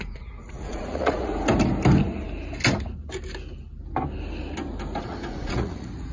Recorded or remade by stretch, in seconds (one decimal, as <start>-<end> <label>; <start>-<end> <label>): 0.0-1.3 remade; 1.3-5.0 recorded; 5.0-6.1 remade